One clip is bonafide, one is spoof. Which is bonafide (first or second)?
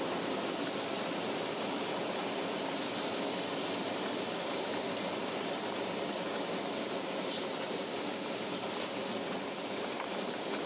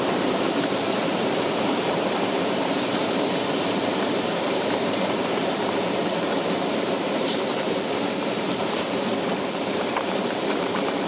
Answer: first